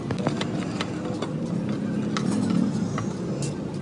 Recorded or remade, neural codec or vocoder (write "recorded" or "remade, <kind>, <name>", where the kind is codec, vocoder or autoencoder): recorded